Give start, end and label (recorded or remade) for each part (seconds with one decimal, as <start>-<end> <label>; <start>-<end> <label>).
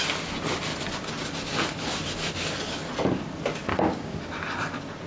0.0-3.7 recorded; 3.7-4.2 remade; 4.2-5.1 recorded